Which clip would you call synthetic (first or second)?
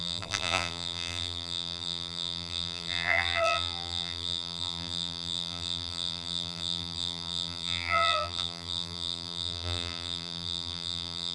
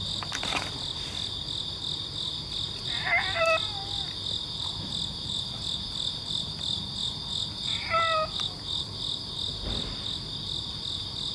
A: first